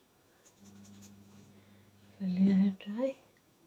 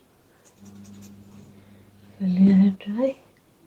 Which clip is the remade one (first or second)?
first